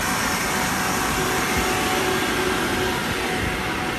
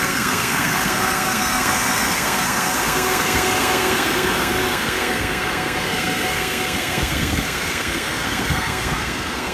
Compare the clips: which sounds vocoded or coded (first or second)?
second